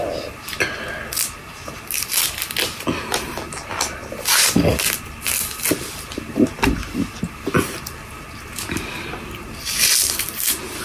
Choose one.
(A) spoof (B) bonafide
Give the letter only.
B